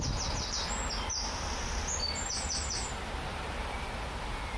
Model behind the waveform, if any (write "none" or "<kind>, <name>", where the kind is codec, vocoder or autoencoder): none